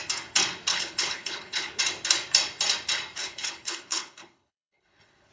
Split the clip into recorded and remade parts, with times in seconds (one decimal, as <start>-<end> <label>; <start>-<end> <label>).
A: 0.0-0.7 recorded; 0.7-1.8 remade; 1.8-3.2 recorded; 3.2-5.3 remade